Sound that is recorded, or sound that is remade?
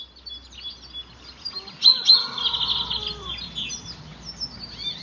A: recorded